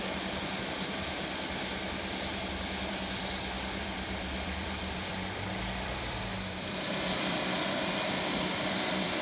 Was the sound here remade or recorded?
remade